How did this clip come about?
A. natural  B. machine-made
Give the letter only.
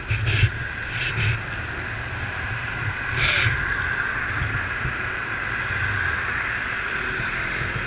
A